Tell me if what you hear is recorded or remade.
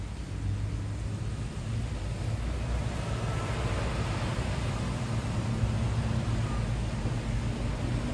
recorded